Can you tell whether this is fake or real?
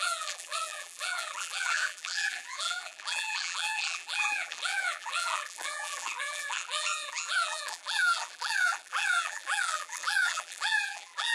fake